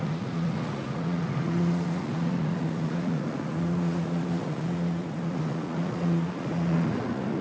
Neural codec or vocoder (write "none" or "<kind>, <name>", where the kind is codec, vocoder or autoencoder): vocoder, Vocos